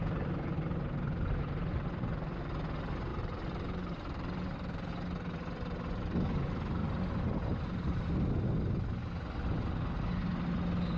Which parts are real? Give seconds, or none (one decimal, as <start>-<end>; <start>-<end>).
0.0-3.1; 4.9-6.8; 8.1-11.0